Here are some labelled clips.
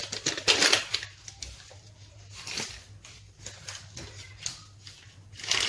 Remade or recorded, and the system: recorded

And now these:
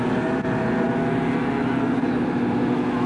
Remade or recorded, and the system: recorded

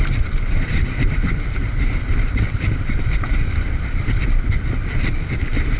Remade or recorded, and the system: remade, vocoder, BigVGAN v2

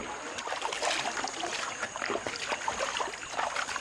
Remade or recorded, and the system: recorded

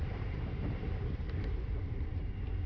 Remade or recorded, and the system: remade, vocoder, BigVGAN v2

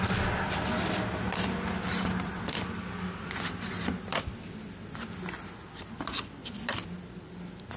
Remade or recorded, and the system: remade, vocoder, BigVGAN v2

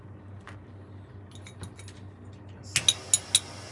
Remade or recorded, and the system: recorded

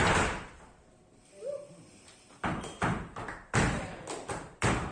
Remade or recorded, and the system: remade, vocoder, BigVGAN v2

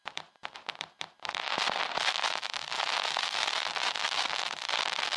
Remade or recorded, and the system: remade, vocoder, BigVGAN v2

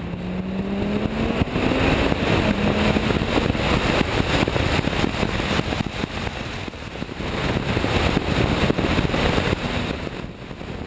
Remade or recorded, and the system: recorded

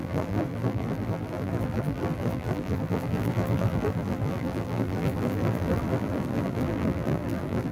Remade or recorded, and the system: remade, vocoder, BigVGAN v2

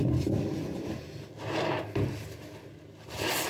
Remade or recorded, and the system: recorded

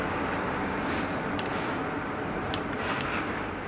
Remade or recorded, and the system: remade, vocoder, BigVGAN v2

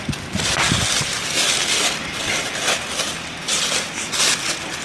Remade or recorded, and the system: recorded